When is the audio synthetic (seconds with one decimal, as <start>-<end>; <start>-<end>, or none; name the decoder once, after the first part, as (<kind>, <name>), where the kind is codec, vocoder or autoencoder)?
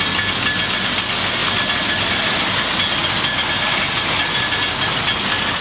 none